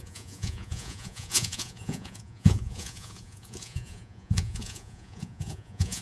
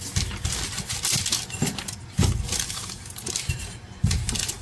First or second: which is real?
second